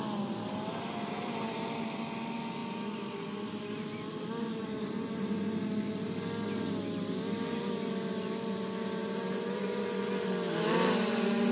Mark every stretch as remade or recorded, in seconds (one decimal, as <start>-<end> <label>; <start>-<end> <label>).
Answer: 0.0-0.7 recorded; 0.7-1.8 remade; 1.8-9.0 recorded; 9.0-9.8 remade; 9.8-11.5 recorded